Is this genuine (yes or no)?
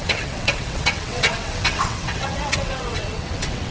no